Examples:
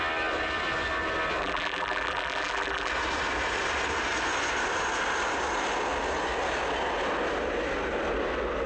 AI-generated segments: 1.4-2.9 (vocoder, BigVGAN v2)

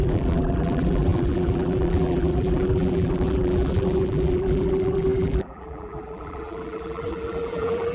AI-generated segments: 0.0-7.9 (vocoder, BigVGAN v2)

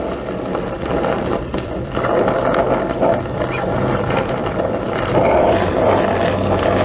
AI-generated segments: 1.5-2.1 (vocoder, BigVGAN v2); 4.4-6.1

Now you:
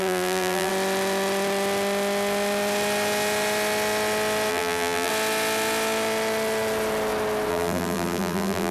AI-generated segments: 0.0-0.7 (vocoder, BigVGAN v2); 4.5-5.1; 7.5-8.7

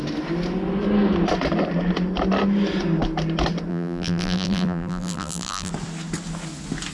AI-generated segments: 3.7-5.7 (vocoder, BigVGAN v2)

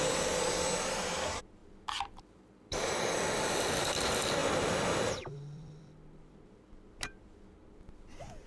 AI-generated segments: 1.6-3.7 (vocoder, BigVGAN v2); 4.4-6.2

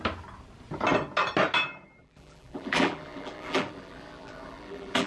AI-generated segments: 2.0-5.1 (vocoder, BigVGAN v2)